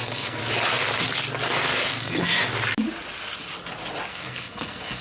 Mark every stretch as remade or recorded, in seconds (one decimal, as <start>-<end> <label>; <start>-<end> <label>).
0.0-0.4 remade; 0.4-1.9 recorded; 1.9-2.3 remade; 2.3-4.1 recorded; 4.1-5.0 remade